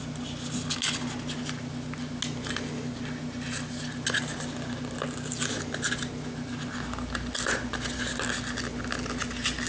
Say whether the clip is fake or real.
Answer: real